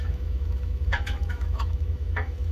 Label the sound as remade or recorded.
remade